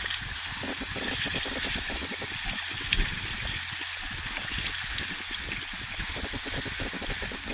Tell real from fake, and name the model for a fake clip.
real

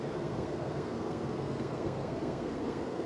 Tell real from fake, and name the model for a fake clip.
fake, codec, SNAC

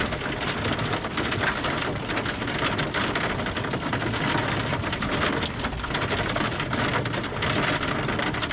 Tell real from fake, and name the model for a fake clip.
real